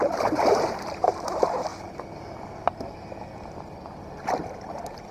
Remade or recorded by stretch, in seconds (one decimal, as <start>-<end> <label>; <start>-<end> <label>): 0.0-1.7 remade; 1.7-5.1 recorded